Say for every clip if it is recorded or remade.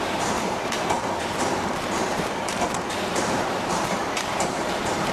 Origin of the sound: remade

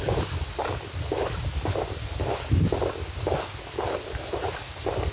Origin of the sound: recorded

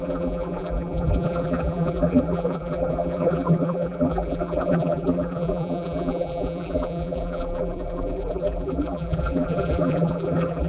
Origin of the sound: remade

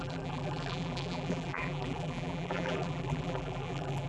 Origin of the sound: remade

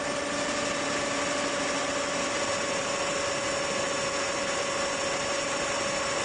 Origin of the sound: remade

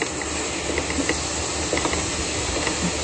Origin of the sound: recorded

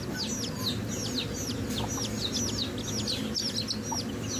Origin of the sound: recorded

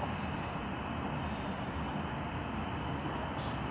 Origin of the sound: recorded